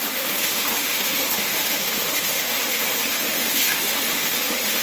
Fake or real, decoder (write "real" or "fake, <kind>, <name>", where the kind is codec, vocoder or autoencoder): fake, autoencoder, DAC-VAE